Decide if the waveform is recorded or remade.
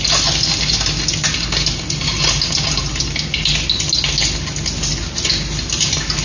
recorded